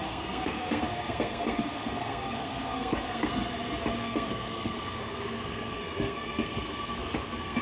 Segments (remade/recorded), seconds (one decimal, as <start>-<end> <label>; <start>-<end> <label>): 0.0-3.4 remade; 3.4-4.0 recorded; 4.0-7.6 remade